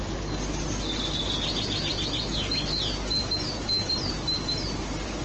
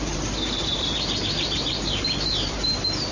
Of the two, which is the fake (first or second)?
second